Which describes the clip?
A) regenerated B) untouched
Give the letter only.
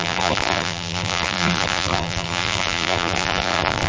A